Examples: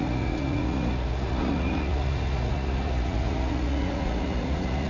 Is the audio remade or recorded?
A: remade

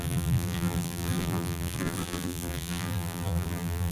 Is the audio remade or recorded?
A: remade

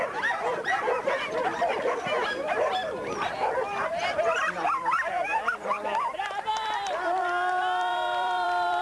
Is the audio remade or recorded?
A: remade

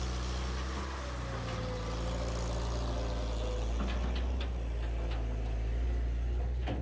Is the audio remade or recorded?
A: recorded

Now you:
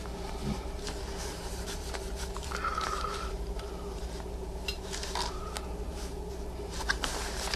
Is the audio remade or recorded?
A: remade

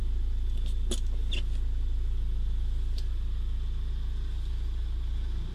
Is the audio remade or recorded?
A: recorded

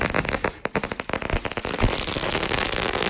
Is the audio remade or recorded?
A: recorded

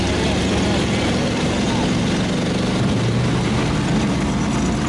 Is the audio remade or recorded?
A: recorded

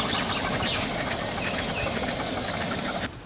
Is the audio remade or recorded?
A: recorded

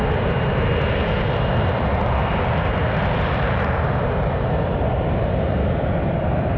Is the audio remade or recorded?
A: remade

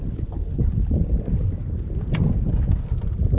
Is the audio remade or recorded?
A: recorded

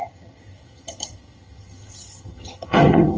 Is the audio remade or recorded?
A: remade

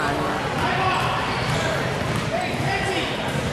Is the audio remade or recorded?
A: recorded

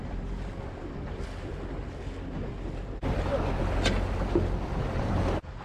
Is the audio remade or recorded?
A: recorded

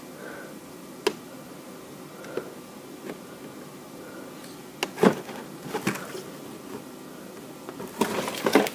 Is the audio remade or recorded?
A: recorded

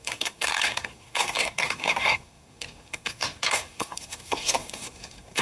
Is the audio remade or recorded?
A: remade